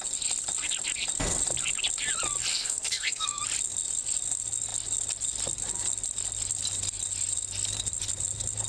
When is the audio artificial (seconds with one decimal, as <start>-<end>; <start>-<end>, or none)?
2.5-3.4